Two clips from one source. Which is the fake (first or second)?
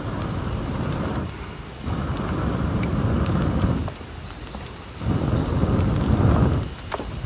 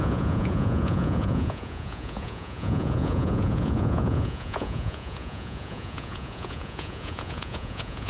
second